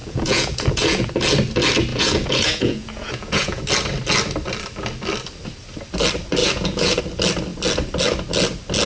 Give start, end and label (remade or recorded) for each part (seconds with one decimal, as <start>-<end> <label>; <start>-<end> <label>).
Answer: 0.0-1.1 remade; 1.1-1.9 recorded; 1.9-3.6 remade; 3.6-6.4 recorded; 6.4-7.0 remade; 7.0-8.9 recorded